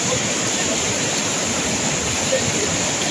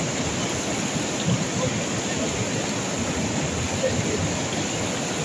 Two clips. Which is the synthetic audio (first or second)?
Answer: first